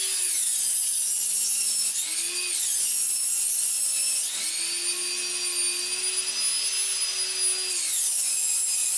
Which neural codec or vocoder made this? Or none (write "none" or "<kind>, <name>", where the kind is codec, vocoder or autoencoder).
none